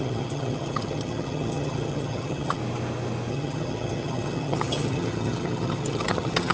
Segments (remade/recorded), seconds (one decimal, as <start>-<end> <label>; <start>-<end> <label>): 0.0-2.6 remade; 2.6-3.3 recorded; 3.3-6.5 remade

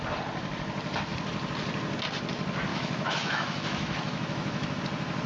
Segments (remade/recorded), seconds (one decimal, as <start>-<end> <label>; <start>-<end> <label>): 0.0-2.7 recorded; 2.7-4.8 remade; 4.8-5.3 recorded

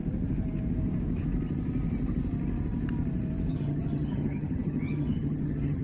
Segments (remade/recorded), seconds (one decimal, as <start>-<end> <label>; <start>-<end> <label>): 0.0-3.5 recorded; 3.5-5.8 remade